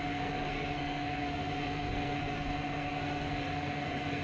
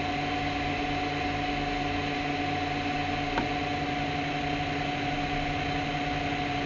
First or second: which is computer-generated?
first